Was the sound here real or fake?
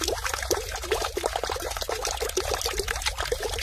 real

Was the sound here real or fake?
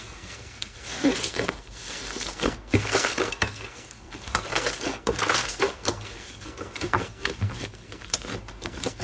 fake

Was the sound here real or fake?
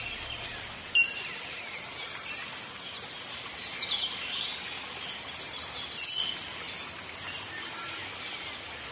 real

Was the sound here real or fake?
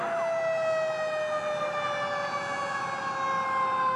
real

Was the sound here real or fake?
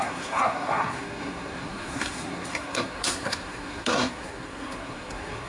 fake